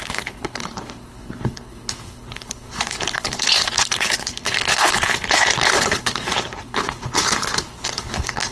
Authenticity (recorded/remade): remade